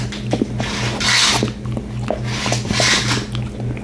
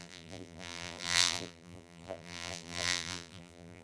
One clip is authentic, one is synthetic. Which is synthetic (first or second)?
second